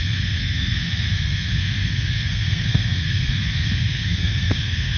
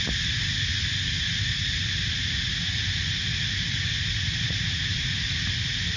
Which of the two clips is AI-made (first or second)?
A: first